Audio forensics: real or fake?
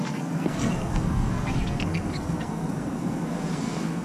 fake